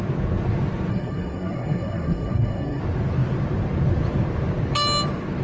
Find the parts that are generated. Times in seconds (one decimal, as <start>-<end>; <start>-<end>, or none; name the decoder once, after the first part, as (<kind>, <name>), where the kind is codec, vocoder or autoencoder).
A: 0.9-2.8 (codec, SNAC)